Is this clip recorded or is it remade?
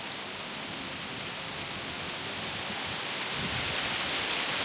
recorded